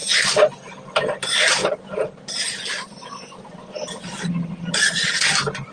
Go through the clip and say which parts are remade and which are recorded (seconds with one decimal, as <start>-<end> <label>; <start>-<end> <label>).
0.0-5.7 recorded

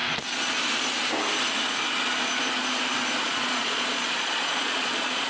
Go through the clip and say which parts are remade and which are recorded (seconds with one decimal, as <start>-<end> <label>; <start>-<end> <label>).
0.0-3.2 recorded; 3.2-5.3 remade

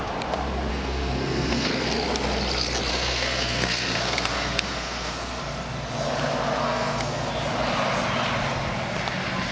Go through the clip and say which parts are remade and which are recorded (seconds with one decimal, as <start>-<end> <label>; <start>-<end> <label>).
0.0-0.7 recorded; 0.7-1.7 remade; 1.7-2.9 recorded; 2.9-5.4 remade; 5.4-6.6 recorded; 6.6-7.3 remade; 7.3-9.5 recorded

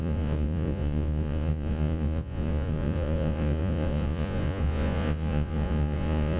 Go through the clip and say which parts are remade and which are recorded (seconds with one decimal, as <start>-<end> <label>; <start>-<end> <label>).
0.0-6.4 remade

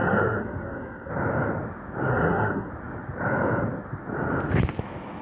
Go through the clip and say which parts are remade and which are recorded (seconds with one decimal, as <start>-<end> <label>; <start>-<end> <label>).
0.0-1.1 remade; 1.1-2.1 recorded; 2.1-2.7 remade; 2.7-5.2 recorded

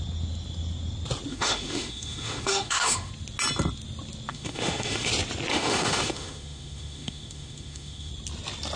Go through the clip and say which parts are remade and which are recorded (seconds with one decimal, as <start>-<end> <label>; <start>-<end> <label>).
0.0-1.3 recorded; 1.3-3.1 remade; 3.1-4.3 recorded; 4.3-5.1 remade; 5.1-5.5 recorded; 5.5-8.1 remade; 8.1-8.8 recorded

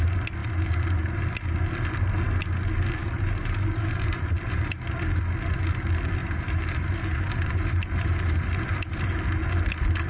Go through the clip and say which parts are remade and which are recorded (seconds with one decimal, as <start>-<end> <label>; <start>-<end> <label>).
0.0-3.0 recorded; 3.0-5.2 remade; 5.2-6.2 recorded; 6.2-9.2 remade; 9.2-10.1 recorded